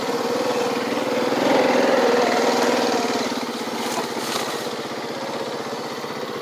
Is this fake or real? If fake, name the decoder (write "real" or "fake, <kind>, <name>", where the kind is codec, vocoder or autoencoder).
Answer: real